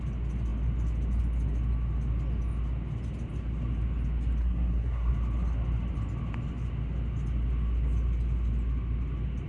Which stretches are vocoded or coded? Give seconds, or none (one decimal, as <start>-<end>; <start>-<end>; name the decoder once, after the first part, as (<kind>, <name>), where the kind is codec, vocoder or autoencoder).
4.4-5.1 (codec, SNAC)